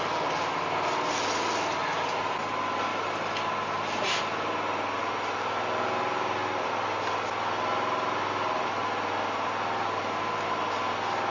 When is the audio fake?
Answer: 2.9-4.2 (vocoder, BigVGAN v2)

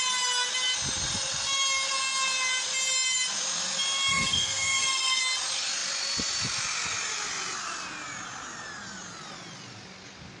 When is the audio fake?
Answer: 4.1-5.2 (codec, SNAC)

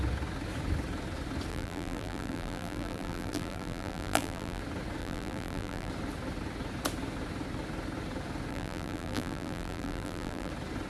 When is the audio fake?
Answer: 1.5-4.6 (vocoder, BigVGAN v2); 5.0-5.9; 8.5-10.5

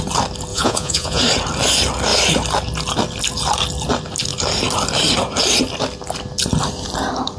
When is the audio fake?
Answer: 0.5-1.2 (vocoder, Vocos)

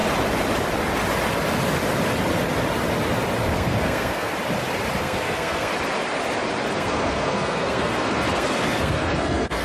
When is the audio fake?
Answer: 3.5-4.3 (codec, SNAC); 5.0-5.7; 6.7-9.6

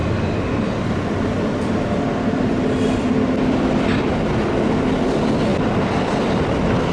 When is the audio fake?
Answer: 0.0-4.1 (vocoder, BigVGAN v2); 5.5-6.9

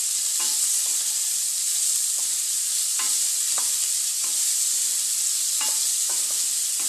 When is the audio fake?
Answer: none

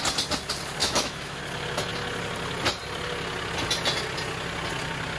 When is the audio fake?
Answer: 0.8-1.4 (autoencoder, DAC-VAE)